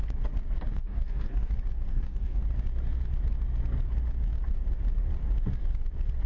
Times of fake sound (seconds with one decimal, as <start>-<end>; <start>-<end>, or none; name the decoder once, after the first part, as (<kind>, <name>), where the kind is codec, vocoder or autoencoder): 0.7-1.5 (codec, DAC); 1.9-2.4